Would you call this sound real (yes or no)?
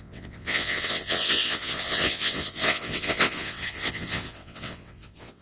no